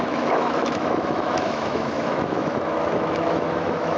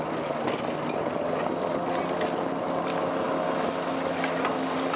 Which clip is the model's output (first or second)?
first